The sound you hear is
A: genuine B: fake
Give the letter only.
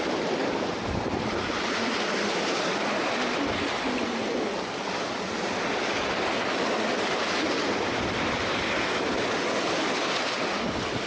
A